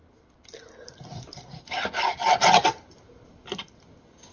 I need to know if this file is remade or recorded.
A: recorded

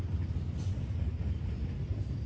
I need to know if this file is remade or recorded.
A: recorded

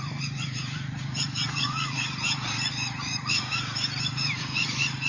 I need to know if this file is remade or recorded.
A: remade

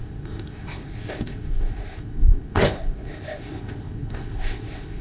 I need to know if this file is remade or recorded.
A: remade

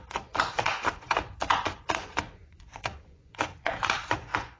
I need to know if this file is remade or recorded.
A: remade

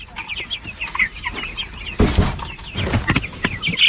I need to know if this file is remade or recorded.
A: recorded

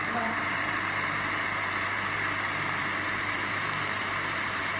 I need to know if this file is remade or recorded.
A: remade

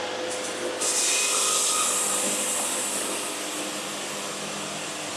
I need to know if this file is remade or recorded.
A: recorded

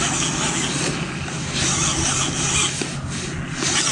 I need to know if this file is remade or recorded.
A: recorded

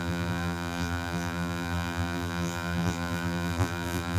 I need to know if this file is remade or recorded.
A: remade